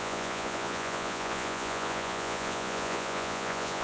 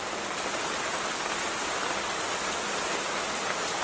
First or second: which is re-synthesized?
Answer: first